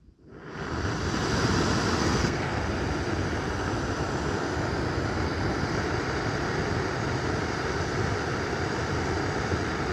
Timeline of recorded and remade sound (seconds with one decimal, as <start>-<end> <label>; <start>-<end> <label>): 0.0-2.0 recorded; 2.0-2.6 remade; 2.6-9.9 recorded